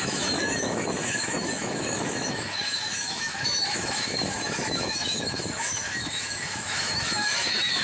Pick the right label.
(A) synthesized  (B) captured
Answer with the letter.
A